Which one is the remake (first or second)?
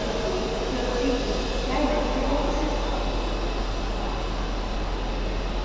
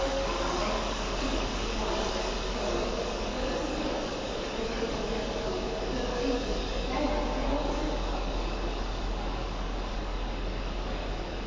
second